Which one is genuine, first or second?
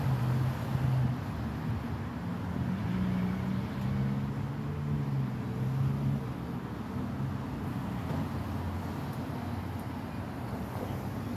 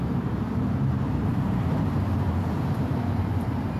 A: first